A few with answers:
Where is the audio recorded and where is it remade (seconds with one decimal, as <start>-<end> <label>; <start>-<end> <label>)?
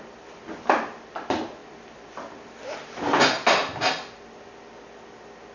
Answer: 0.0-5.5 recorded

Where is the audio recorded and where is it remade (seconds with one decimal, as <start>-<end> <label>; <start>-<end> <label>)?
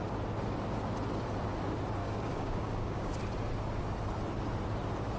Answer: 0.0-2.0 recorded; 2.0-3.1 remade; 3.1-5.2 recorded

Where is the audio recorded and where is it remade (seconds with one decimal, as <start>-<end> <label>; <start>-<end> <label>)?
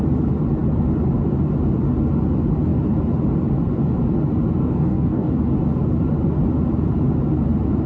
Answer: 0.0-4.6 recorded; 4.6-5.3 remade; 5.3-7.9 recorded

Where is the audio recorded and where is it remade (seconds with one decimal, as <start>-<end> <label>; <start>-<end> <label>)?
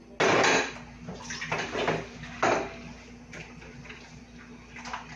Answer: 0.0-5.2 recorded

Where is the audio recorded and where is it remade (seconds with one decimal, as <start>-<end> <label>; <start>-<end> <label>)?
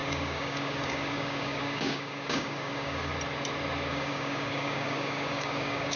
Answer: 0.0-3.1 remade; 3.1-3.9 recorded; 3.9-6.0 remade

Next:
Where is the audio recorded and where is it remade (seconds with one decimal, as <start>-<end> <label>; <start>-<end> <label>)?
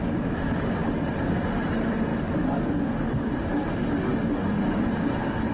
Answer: 0.0-2.1 recorded; 2.1-3.3 remade; 3.3-5.5 recorded